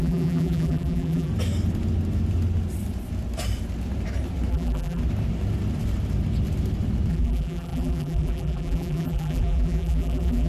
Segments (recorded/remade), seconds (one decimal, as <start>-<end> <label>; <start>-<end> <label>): 0.0-1.3 remade; 1.3-4.5 recorded; 4.5-5.0 remade; 5.0-7.1 recorded; 7.1-10.5 remade